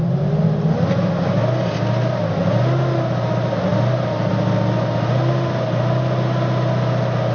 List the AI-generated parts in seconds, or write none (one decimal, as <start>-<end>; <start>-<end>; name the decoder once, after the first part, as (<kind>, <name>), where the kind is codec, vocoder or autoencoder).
none